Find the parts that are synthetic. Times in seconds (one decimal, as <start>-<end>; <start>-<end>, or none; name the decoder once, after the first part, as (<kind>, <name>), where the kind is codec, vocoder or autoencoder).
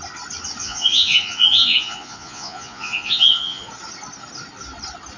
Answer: 0.6-3.7 (vocoder, Vocos)